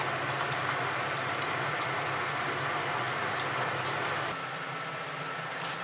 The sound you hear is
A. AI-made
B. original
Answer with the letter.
B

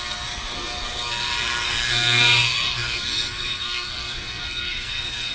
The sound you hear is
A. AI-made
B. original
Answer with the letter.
A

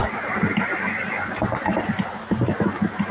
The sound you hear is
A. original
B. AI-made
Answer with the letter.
A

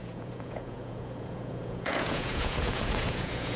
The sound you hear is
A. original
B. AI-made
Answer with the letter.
B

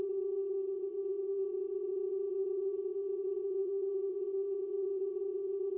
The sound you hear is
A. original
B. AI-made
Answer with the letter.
B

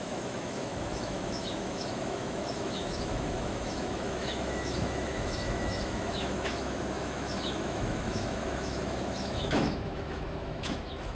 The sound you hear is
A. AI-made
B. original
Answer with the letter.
A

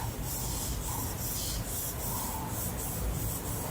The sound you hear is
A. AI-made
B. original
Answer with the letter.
B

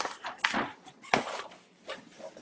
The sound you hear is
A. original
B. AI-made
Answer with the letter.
A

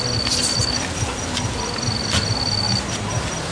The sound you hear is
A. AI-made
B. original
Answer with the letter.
B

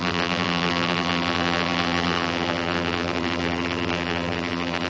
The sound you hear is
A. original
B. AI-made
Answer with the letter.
B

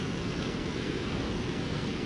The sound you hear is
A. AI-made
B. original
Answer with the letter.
A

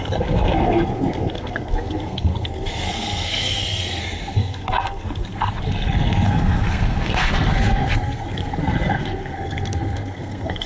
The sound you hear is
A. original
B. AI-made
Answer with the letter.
B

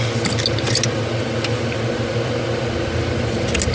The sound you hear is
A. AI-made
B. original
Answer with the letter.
B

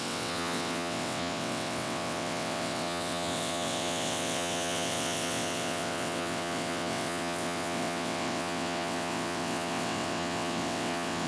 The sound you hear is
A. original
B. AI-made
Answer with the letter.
B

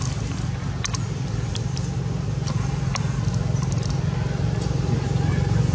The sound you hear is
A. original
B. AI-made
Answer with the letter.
A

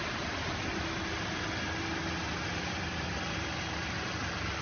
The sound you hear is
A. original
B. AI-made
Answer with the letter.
A